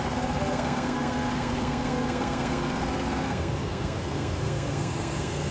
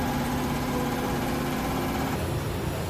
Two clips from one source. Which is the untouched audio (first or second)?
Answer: second